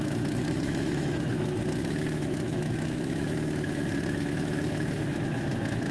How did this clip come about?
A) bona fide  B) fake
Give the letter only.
B